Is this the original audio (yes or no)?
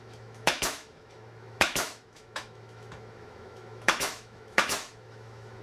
no